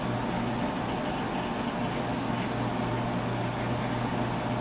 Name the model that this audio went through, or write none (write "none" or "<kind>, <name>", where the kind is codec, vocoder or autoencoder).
none